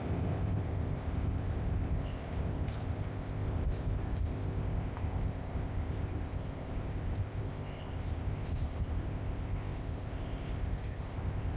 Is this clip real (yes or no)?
no